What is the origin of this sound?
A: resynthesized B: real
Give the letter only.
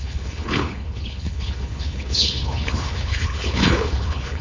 A